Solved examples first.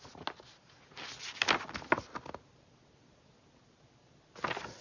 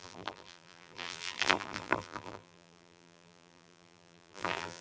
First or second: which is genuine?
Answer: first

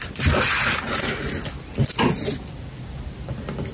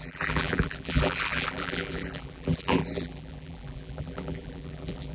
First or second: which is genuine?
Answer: first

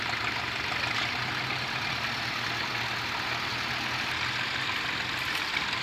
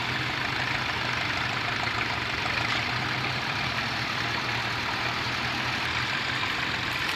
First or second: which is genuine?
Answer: first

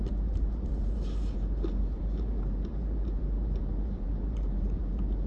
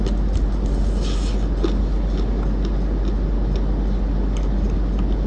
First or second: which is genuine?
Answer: second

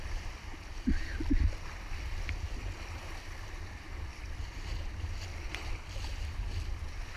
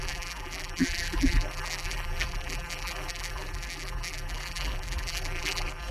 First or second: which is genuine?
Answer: first